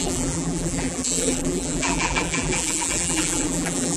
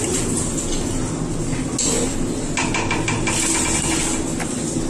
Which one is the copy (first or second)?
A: first